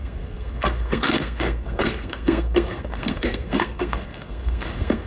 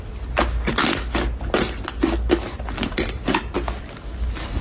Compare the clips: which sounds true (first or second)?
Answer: second